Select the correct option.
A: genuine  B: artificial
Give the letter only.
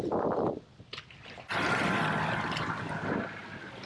A